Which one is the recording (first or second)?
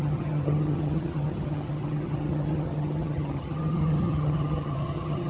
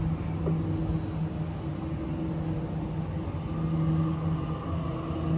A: second